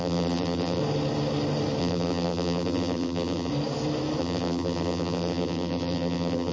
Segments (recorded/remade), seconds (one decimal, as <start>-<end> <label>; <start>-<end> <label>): 0.0-0.8 remade; 0.8-1.8 recorded; 1.8-3.5 remade; 3.5-4.2 recorded; 4.2-6.5 remade